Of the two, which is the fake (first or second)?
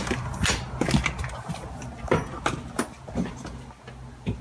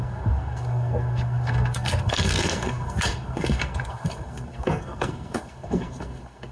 second